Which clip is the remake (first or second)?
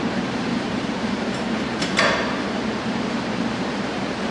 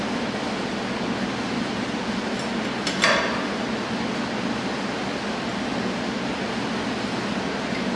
first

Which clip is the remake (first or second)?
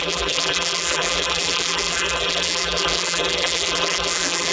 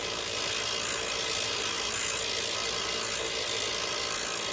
first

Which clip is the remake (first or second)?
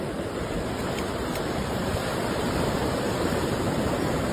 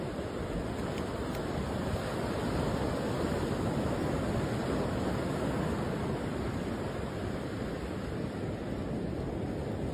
first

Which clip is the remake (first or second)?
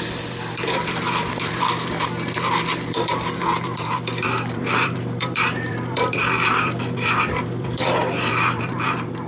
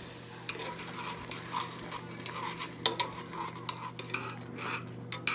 first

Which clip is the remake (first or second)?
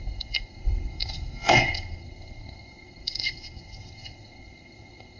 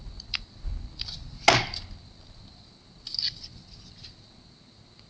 first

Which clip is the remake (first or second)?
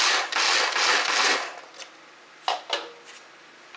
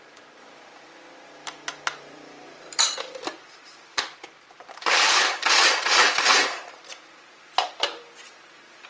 second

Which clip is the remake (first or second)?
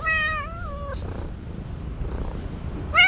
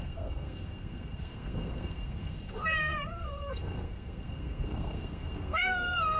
second